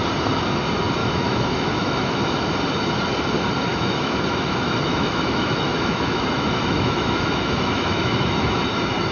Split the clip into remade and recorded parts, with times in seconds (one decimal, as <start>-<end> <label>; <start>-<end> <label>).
0.0-1.0 recorded; 1.0-2.2 remade; 2.2-3.7 recorded; 3.7-8.6 remade; 8.6-9.1 recorded